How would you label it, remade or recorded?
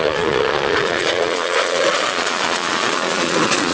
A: remade